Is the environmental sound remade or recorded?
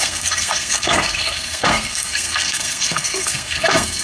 remade